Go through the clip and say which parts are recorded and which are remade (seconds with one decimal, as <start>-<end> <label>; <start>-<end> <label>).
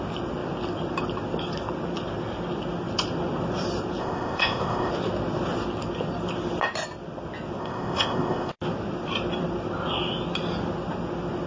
0.0-4.0 recorded; 4.0-4.9 remade; 4.9-7.6 recorded; 7.6-8.5 remade; 8.5-11.5 recorded